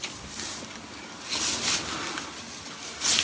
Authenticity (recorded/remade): recorded